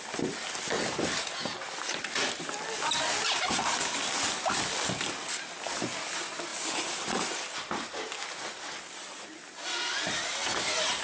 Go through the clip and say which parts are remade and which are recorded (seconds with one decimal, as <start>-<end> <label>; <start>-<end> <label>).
0.0-11.0 recorded